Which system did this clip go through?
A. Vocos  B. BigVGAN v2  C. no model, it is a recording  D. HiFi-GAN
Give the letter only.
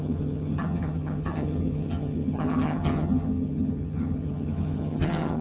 D